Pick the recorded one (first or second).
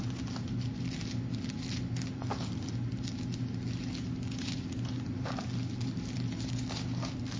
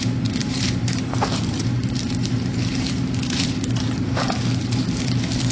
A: first